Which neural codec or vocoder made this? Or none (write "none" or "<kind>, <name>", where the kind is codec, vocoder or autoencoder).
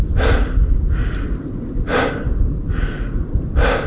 none